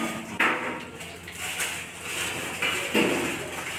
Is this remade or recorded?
recorded